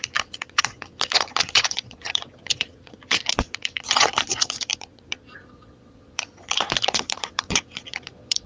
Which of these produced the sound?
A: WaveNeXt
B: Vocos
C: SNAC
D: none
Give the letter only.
B